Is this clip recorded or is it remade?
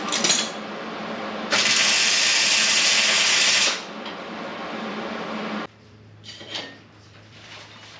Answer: remade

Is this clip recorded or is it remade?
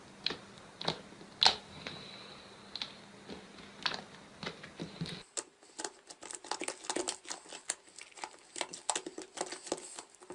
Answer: recorded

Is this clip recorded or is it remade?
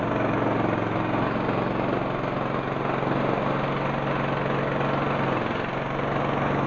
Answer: recorded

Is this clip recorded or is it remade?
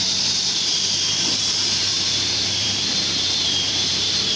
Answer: remade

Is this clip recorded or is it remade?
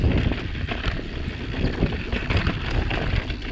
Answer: recorded